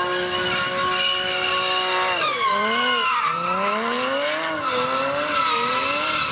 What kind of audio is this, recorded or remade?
recorded